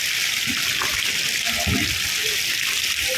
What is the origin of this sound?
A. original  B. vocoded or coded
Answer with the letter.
A